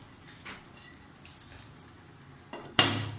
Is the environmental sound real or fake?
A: real